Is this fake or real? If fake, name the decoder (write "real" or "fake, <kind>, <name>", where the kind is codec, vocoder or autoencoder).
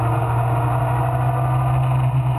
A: real